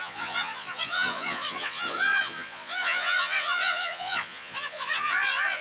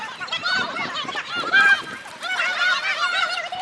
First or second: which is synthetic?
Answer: first